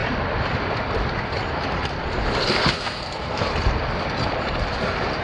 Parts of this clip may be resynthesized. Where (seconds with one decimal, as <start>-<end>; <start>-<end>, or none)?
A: 2.7-3.5